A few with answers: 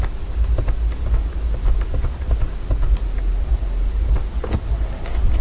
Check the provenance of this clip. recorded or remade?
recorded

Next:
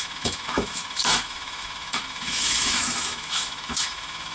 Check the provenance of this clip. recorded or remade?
remade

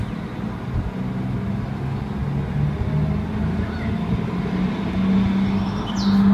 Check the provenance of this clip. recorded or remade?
recorded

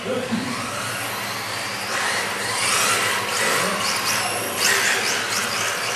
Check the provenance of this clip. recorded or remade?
recorded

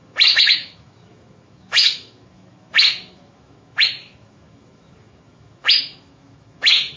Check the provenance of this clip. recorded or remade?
remade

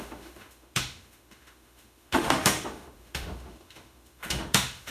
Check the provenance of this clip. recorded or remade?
remade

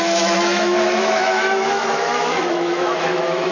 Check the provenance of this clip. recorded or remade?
remade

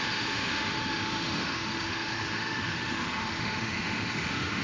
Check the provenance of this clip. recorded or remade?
remade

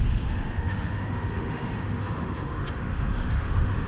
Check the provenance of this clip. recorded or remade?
remade